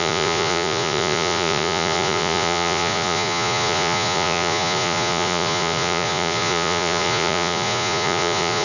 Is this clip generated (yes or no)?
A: yes